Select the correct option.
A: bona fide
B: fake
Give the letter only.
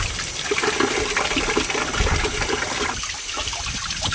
A